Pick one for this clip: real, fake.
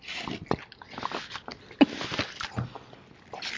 real